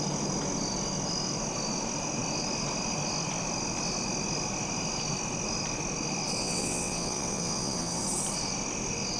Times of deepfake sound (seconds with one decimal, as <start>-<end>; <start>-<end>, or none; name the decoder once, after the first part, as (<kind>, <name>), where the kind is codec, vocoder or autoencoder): 6.4-8.0 (vocoder, WaveNeXt)

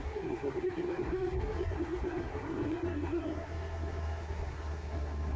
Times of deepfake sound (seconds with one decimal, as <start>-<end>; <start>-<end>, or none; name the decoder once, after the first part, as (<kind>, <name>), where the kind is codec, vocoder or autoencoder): 0.0-5.4 (codec, SNAC)

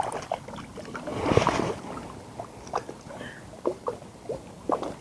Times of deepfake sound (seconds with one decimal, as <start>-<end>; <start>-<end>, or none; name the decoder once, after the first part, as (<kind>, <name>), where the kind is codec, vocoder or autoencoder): none